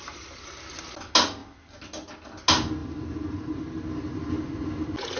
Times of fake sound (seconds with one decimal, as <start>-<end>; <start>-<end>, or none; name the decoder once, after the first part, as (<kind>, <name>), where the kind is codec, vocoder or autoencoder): 2.8-3.6 (vocoder, BigVGAN v2)